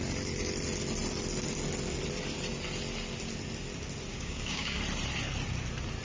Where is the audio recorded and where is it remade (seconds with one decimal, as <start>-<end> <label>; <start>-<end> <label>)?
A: 0.0-4.1 recorded; 4.1-4.8 remade; 4.8-6.0 recorded